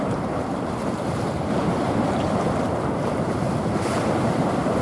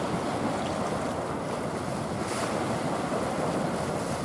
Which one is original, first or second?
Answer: second